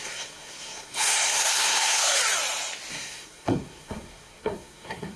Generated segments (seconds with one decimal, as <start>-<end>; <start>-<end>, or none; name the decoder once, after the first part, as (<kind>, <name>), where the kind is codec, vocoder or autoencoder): 0.0-2.2 (codec, SNAC); 2.9-5.2